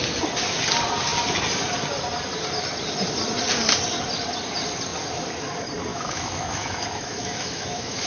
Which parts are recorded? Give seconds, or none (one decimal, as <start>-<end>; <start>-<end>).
0.0-5.9